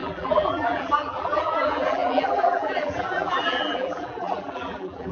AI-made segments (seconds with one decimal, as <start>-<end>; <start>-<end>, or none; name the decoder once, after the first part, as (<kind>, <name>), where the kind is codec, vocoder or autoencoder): 0.0-5.1 (vocoder, BigVGAN v2)